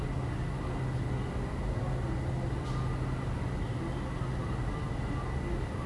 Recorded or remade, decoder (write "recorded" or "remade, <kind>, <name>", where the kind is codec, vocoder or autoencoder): recorded